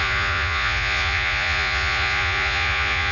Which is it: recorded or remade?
remade